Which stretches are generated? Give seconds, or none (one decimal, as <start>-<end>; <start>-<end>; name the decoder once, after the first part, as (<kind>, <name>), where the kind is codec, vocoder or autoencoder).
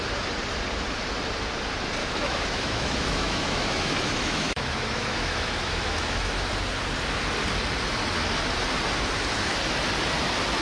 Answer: 2.0-6.5 (autoencoder, DAC-VAE)